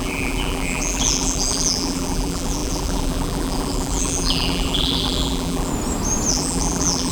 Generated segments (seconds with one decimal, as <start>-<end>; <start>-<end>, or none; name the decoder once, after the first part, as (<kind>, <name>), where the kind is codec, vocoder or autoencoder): 0.0-5.7 (vocoder, BigVGAN v2); 6.3-7.1